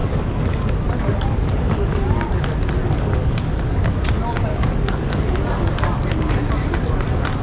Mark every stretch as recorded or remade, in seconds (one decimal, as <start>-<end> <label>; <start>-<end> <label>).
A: 0.0-0.7 remade; 0.7-1.1 recorded; 1.1-2.4 remade; 2.4-2.8 recorded; 2.8-4.0 remade; 4.0-4.5 recorded; 4.5-6.3 remade; 6.3-7.4 recorded